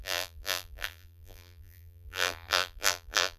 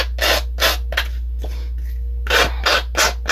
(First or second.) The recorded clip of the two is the second